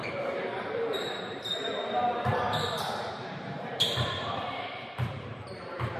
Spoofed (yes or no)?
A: yes